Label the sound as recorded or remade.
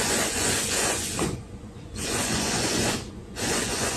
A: remade